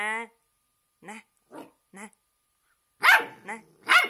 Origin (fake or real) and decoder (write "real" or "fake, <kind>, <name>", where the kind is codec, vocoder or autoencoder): real